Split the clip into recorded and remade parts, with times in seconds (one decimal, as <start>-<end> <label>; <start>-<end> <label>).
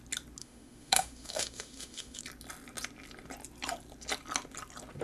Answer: 0.0-0.4 recorded; 0.4-2.2 remade; 2.2-5.0 recorded